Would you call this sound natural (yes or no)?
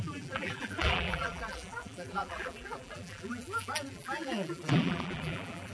no